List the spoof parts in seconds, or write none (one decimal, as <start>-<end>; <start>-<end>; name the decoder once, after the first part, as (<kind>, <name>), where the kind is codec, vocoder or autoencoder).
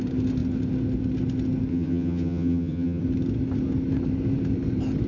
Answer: 1.7-3.0 (vocoder, HiFi-GAN)